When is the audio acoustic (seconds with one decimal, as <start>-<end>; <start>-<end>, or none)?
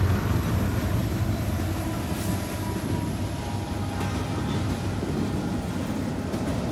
0.0-6.7